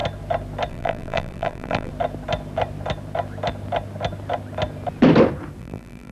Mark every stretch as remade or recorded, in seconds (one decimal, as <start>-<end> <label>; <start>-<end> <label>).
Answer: 0.0-0.7 recorded; 0.7-1.9 remade; 1.9-5.6 recorded; 5.6-6.1 remade

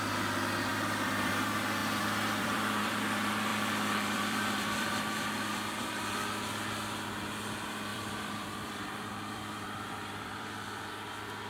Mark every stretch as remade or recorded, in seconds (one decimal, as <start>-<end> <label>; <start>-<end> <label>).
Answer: 0.0-0.7 recorded; 0.7-1.3 remade; 1.3-1.8 recorded; 1.8-3.0 remade; 3.0-3.5 recorded; 3.5-5.9 remade; 5.9-7.9 recorded; 7.9-10.9 remade; 10.9-11.5 recorded

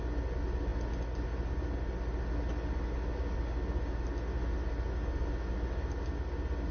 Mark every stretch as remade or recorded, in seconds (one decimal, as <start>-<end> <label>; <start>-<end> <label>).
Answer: 0.0-6.7 recorded

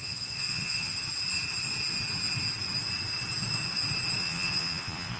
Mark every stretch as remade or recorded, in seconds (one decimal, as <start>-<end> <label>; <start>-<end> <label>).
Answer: 0.0-1.1 remade; 1.1-4.2 recorded; 4.2-5.2 remade

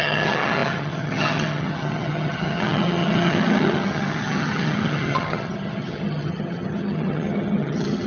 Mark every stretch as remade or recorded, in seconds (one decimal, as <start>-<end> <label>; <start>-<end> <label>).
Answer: 0.0-8.1 remade

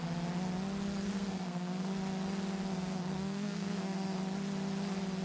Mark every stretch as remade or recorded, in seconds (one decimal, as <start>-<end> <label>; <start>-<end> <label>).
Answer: 0.0-1.1 recorded; 1.1-1.9 remade; 1.9-2.7 recorded; 2.7-4.2 remade; 4.2-5.2 recorded

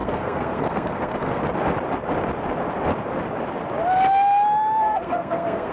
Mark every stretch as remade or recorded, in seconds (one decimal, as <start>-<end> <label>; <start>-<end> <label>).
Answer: 0.0-1.4 remade; 1.4-4.8 recorded; 4.8-5.7 remade